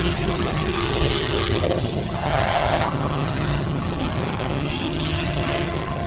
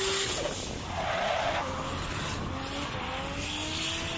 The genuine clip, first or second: second